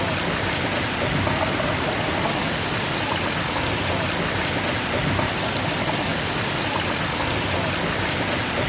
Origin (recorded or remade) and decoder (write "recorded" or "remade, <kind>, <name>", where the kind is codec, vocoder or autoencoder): recorded